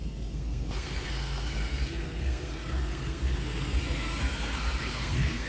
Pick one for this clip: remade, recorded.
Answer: remade